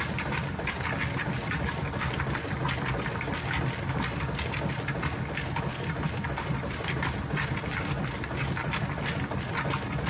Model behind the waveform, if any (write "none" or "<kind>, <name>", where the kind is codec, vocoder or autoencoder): none